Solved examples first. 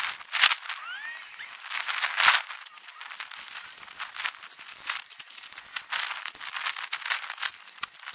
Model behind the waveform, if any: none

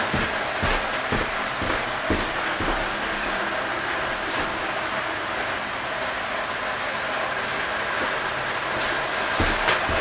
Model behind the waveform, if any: none